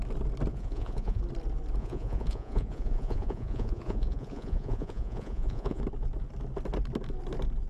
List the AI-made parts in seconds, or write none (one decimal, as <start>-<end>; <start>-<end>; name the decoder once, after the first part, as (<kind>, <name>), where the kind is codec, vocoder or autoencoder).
0.5-1.2 (vocoder, Vocos); 1.8-5.8